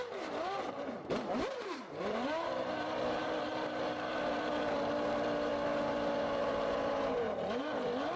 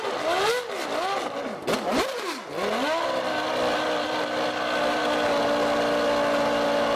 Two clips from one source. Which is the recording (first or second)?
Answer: second